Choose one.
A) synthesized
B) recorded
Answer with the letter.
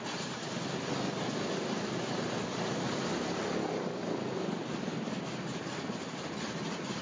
B